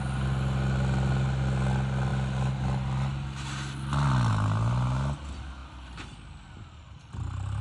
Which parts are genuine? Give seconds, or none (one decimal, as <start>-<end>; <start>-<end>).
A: 0.0-7.6